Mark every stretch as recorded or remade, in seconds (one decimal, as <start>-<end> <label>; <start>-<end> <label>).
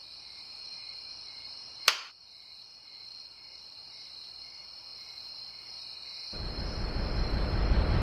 0.0-4.9 remade; 4.9-8.0 recorded